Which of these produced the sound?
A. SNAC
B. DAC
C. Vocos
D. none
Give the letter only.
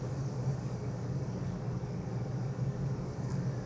B